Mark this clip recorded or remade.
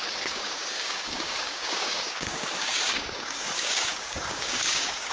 remade